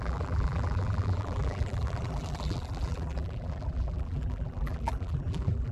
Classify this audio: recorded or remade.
remade